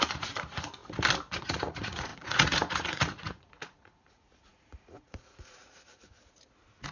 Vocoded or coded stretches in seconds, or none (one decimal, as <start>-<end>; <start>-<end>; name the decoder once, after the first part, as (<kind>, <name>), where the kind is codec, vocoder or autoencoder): 0.0-0.8 (vocoder, Vocos); 1.4-6.9